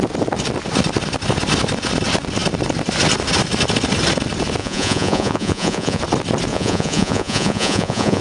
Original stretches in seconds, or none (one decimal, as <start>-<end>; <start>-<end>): 0.0-4.6; 6.0-6.5